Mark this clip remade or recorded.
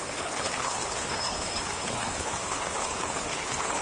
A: remade